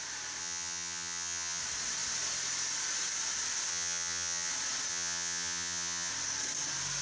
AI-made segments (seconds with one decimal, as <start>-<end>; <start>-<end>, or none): 0.4-1.6; 3.7-4.5; 4.9-6.1